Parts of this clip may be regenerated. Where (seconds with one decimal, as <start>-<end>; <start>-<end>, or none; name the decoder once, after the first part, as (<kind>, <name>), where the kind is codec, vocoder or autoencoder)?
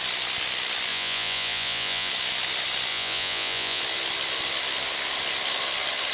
0.9-2.1 (vocoder, Vocos); 2.9-3.8